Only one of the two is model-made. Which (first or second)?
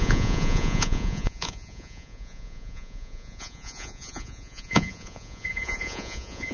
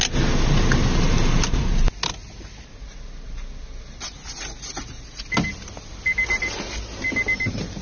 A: first